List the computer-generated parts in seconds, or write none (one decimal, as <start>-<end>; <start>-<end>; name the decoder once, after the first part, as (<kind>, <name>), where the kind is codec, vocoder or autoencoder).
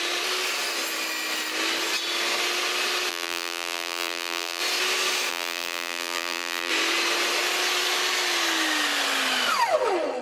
3.1-4.6 (vocoder, BigVGAN v2); 5.3-6.7